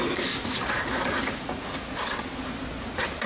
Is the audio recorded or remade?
recorded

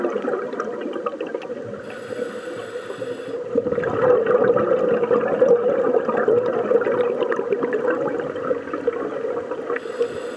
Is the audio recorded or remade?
recorded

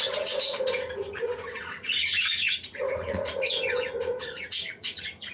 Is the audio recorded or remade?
remade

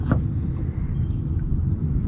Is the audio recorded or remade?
recorded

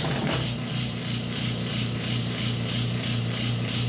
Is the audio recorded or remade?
remade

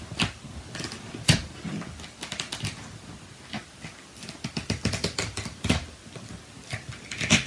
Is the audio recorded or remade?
recorded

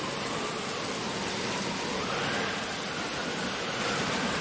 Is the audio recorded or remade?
recorded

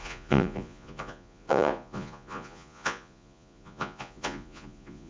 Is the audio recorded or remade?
remade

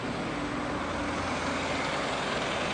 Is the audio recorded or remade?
recorded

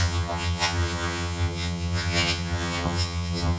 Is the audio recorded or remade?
remade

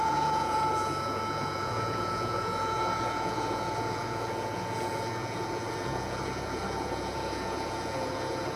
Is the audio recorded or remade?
remade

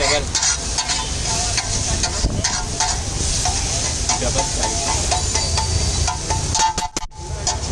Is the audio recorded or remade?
recorded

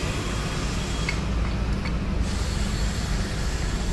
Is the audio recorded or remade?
recorded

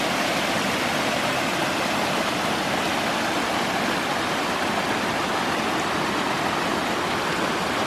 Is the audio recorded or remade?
recorded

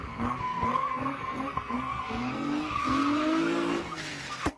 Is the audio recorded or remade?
remade